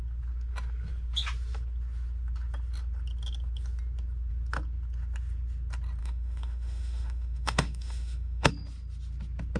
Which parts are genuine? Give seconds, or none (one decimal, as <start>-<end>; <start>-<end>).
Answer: 0.0-6.0; 8.5-9.6